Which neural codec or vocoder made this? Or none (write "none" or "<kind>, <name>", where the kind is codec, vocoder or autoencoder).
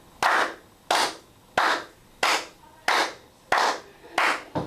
none